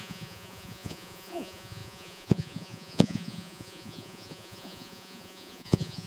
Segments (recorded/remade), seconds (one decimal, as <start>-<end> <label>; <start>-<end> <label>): 0.0-6.1 remade